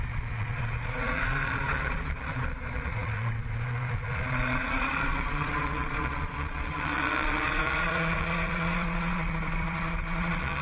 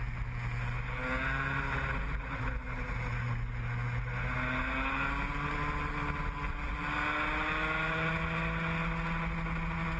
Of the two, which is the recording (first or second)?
second